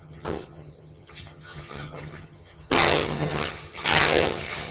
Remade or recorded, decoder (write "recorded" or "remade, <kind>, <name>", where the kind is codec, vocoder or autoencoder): remade, vocoder, HiFi-GAN